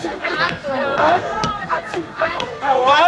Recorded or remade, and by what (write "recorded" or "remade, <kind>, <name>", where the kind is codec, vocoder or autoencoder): remade, codec, SNAC